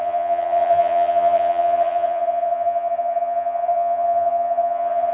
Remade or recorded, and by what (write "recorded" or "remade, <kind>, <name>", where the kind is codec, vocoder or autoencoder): remade, vocoder, HiFi-GAN